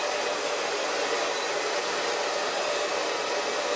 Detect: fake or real real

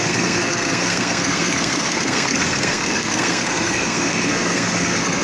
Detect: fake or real fake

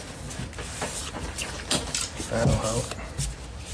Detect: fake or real real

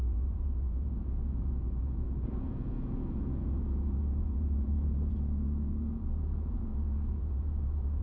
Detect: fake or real fake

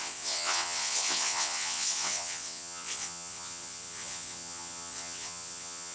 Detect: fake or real fake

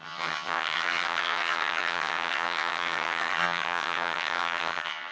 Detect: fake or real fake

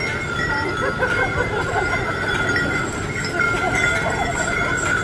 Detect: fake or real real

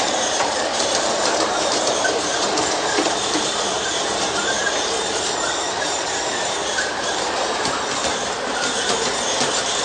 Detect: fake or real fake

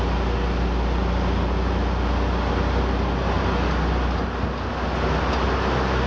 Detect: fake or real real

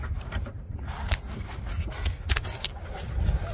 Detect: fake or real real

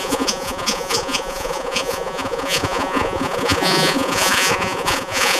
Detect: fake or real fake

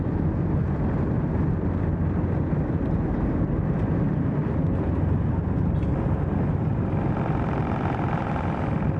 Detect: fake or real real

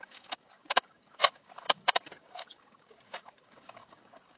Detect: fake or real fake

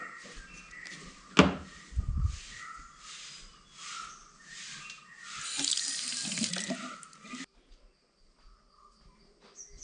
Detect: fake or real real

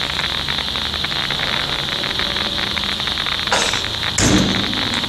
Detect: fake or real real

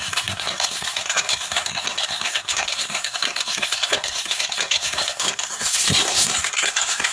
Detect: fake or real fake